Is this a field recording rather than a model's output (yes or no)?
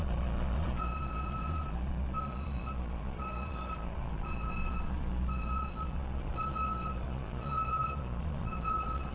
no